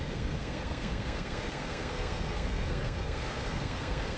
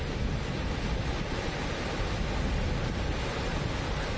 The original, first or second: second